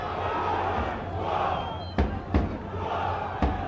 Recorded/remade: recorded